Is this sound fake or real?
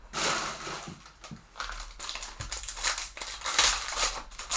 real